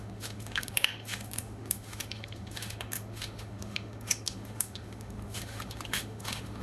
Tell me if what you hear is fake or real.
fake